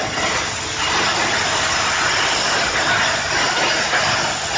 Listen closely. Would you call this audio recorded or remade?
recorded